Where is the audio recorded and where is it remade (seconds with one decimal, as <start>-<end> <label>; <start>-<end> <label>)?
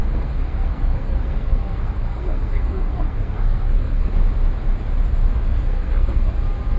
0.0-4.1 remade; 4.1-5.4 recorded; 5.4-6.3 remade; 6.3-6.8 recorded